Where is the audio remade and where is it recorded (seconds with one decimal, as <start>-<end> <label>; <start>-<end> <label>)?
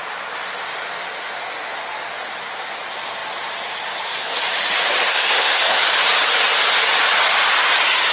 0.0-5.1 recorded; 5.1-5.8 remade; 5.8-8.1 recorded